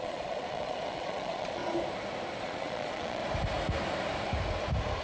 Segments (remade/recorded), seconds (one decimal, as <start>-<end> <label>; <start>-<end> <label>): 0.0-1.6 remade; 1.6-2.4 recorded; 2.4-3.2 remade; 3.2-5.0 recorded